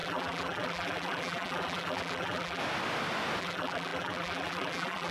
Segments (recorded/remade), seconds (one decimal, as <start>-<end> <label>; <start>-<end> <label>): 0.0-2.6 remade; 2.6-3.4 recorded; 3.4-5.1 remade